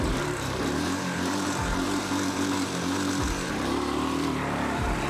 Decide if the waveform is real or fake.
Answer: fake